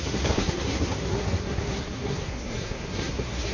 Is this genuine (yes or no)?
no